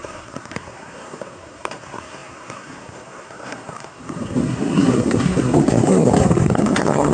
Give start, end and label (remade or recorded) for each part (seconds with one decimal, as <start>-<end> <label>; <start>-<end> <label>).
0.0-7.1 remade